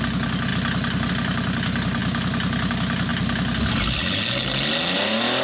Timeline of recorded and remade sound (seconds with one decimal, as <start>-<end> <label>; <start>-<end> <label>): 0.0-5.4 recorded

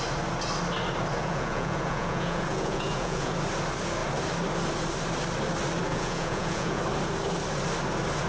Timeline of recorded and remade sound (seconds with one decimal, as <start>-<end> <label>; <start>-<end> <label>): 0.0-1.2 recorded; 1.2-3.3 remade; 3.3-5.9 recorded; 5.9-6.8 remade; 6.8-8.3 recorded

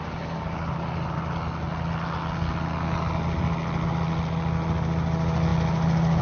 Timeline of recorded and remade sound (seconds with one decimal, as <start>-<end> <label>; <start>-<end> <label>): 0.0-6.2 recorded

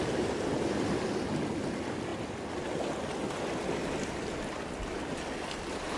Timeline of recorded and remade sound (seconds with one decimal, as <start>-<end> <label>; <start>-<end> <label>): 0.0-6.0 recorded

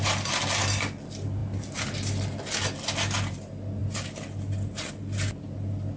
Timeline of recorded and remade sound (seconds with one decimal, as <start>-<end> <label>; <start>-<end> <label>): 0.0-6.0 recorded

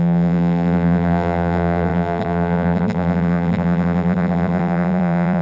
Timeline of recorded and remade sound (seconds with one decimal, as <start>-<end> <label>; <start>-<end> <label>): 0.0-5.4 remade

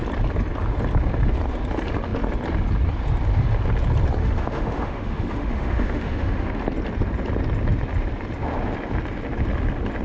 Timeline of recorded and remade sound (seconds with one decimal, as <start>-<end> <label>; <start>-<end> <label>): 0.0-4.2 recorded; 4.2-6.6 remade; 6.6-10.0 recorded

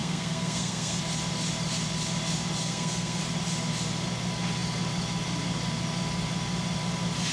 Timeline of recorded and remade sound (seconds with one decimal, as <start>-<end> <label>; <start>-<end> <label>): 0.0-1.0 remade; 1.0-2.6 recorded; 2.6-3.2 remade; 3.2-7.3 recorded